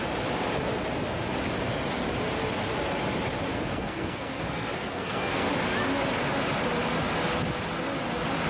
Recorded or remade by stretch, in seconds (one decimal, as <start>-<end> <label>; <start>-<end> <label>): 0.0-3.5 recorded; 3.5-5.5 remade; 5.5-8.5 recorded